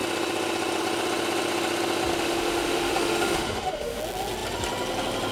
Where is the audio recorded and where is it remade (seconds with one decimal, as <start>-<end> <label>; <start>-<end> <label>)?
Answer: 0.0-2.1 recorded; 2.1-4.0 remade; 4.0-5.3 recorded